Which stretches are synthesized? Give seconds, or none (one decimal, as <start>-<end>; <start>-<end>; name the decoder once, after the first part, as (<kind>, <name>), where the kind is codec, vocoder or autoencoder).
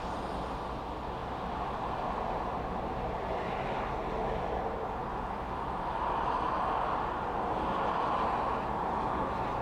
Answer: none